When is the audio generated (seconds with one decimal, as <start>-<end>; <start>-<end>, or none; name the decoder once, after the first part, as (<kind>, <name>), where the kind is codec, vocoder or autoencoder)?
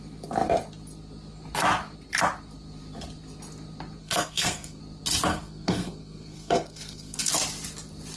4.0-4.8 (codec, SNAC); 5.3-7.3